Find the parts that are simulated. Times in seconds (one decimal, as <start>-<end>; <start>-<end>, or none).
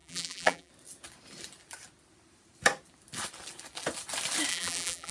0.0-0.7; 4.5-5.1